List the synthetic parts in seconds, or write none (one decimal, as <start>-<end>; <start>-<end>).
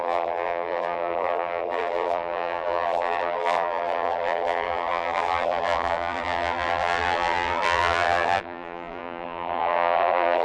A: 0.0-10.4